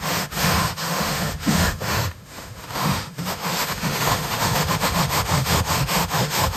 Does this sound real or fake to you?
fake